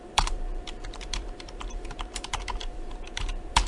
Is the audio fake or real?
fake